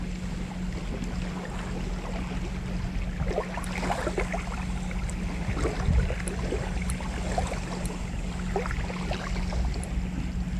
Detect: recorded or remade recorded